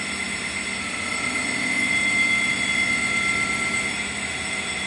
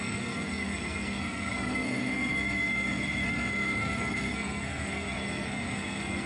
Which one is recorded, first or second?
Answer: first